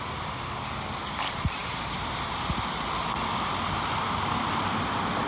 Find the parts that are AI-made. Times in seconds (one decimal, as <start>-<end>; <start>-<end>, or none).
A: none